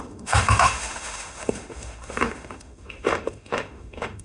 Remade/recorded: remade